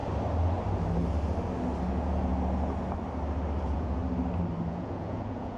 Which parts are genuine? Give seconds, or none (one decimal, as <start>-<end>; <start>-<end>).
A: 0.0-1.9; 2.3-3.6; 4.0-4.7